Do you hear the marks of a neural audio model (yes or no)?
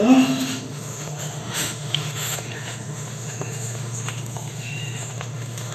yes